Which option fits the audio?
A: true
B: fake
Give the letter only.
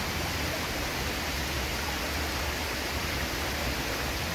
A